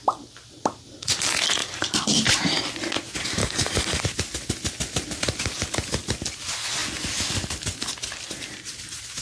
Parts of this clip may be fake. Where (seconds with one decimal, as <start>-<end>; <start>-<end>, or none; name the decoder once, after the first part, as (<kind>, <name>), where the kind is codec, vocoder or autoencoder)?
3.4-4.0 (codec, DAC)